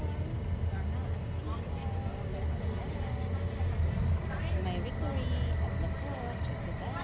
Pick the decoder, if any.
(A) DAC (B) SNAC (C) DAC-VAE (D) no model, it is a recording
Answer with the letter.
D